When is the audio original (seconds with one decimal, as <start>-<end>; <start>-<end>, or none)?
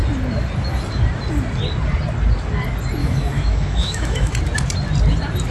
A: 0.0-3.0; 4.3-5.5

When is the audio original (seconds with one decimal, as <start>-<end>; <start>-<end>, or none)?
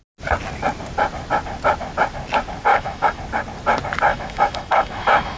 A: 0.0-2.7; 3.2-4.1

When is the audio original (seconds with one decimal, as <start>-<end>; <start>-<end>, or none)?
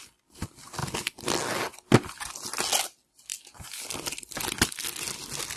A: 0.0-5.6